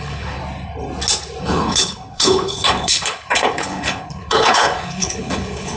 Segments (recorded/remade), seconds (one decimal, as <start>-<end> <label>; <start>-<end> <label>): 0.0-0.4 remade; 0.4-1.4 recorded; 1.4-5.8 remade